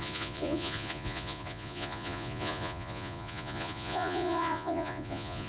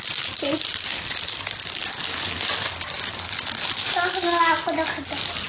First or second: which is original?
second